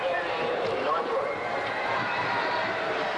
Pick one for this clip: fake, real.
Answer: fake